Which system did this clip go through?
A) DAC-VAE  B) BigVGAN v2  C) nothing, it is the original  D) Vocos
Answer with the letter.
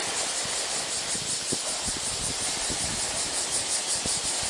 C